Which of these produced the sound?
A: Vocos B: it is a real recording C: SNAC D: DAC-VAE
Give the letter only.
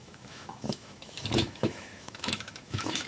D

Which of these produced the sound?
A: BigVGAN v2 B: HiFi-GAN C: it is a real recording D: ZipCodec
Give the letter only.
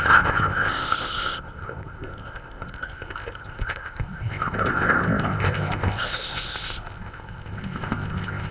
D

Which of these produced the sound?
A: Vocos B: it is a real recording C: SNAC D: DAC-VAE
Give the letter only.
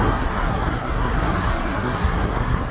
C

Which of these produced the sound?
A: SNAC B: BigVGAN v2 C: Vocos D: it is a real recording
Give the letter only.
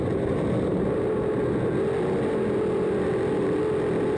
D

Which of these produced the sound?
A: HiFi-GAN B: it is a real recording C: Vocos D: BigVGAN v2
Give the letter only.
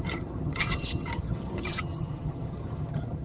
A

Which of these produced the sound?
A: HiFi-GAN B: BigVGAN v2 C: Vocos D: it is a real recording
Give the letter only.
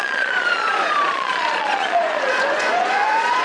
C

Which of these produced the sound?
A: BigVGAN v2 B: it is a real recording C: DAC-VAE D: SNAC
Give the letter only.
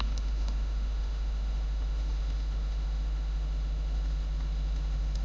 C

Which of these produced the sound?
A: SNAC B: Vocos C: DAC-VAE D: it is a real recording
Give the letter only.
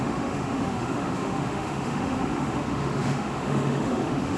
C